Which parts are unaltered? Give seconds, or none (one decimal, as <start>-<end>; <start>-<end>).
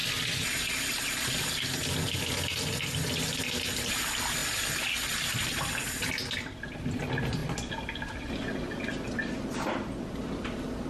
0.0-7.4; 8.2-10.9